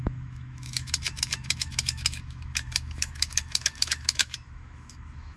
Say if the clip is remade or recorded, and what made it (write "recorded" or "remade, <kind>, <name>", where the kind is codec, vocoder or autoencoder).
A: remade, autoencoder, DAC-VAE